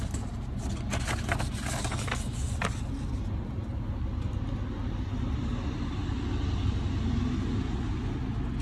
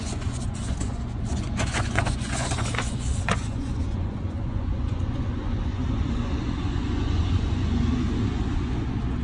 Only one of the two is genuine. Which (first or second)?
first